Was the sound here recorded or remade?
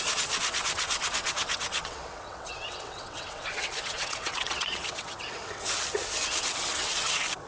remade